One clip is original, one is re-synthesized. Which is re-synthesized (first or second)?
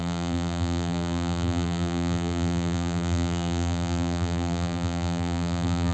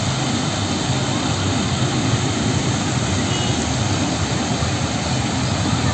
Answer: first